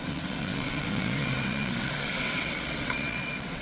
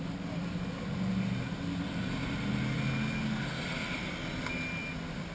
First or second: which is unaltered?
second